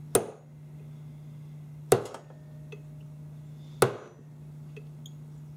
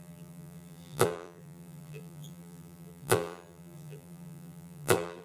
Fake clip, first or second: second